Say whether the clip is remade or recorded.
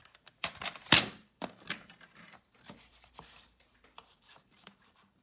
remade